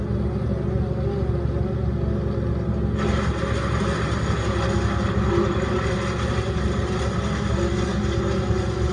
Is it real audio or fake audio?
real